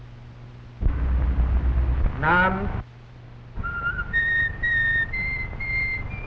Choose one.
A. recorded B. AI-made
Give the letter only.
A